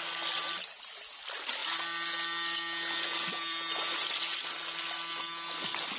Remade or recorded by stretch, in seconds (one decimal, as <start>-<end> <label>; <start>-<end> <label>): 0.0-6.0 recorded